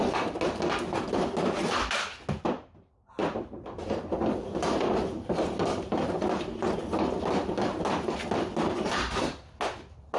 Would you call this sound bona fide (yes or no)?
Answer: yes